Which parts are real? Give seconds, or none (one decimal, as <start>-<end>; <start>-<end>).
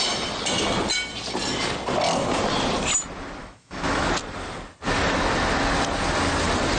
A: 0.0-3.4; 4.1-6.8